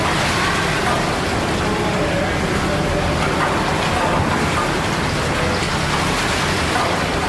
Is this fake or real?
real